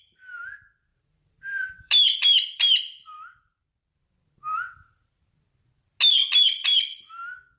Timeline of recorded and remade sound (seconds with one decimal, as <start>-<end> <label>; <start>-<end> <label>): 0.0-0.9 recorded; 0.9-3.6 remade; 3.6-4.5 recorded; 4.5-5.3 remade; 5.3-7.6 recorded